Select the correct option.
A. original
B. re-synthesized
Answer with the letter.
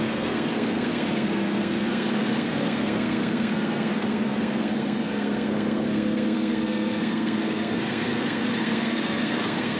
B